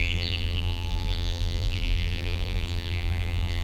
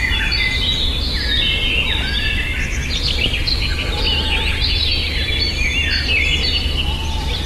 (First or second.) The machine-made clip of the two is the first